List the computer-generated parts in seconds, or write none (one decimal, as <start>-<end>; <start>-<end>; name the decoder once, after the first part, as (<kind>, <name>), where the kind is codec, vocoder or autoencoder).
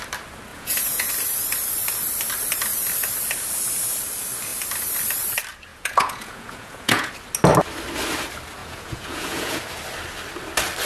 0.5-1.1 (vocoder, Vocos); 5.7-7.1; 8.6-9.6